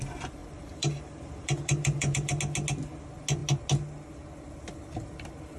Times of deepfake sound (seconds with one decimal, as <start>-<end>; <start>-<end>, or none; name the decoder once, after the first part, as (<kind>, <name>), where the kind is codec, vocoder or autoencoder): 0.4-2.4 (vocoder, BigVGAN v2)